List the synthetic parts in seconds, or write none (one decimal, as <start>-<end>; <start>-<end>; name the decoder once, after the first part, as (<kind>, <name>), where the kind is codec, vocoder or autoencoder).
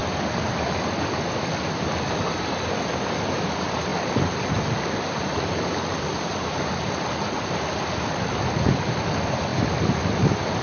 3.9-7.6 (vocoder, BigVGAN v2)